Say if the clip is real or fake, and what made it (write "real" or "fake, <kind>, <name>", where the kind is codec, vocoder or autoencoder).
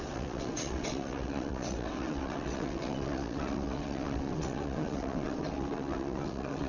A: fake, vocoder, WaveNeXt